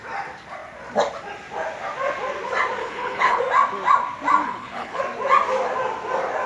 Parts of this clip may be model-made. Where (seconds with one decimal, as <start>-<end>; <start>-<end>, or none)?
2.8-3.4; 4.4-5.0